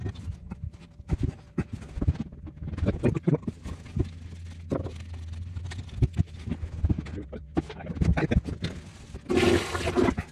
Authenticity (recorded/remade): recorded